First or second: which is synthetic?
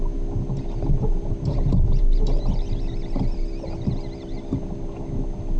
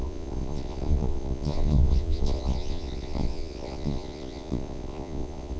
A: second